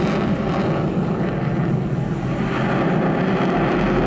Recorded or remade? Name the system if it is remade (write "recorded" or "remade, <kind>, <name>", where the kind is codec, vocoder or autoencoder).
recorded